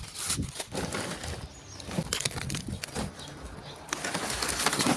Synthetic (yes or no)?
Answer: no